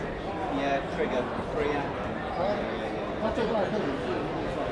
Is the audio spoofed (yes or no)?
no